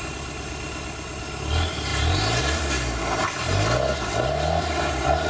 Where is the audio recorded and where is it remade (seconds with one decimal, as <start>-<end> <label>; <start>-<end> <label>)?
0.0-5.3 recorded